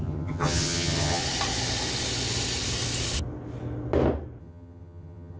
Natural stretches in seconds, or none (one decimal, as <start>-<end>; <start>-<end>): 1.2-4.4

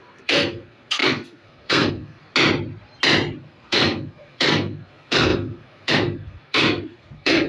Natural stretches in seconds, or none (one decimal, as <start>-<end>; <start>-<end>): 2.3-3.4

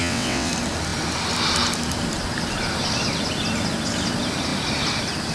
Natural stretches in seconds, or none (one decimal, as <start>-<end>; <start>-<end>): 0.5-5.3

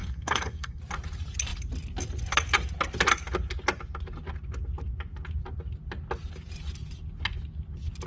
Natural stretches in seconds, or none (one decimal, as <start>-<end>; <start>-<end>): 0.8-8.1